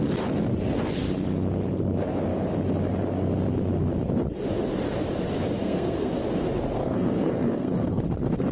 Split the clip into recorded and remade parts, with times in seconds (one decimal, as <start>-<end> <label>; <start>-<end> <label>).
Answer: 0.0-5.6 recorded; 5.6-6.1 remade; 6.1-6.8 recorded; 6.8-8.0 remade; 8.0-8.5 recorded